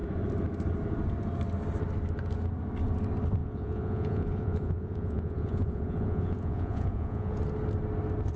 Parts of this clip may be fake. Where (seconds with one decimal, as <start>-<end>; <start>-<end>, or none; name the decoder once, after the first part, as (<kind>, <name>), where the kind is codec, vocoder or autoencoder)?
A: 3.4-7.4 (vocoder, Vocos)